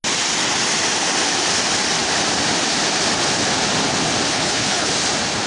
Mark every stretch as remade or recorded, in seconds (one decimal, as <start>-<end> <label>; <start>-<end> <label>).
0.0-4.3 recorded; 4.3-4.9 remade; 4.9-5.5 recorded